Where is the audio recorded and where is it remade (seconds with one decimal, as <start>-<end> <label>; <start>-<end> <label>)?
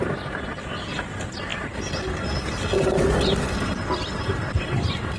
0.0-5.2 recorded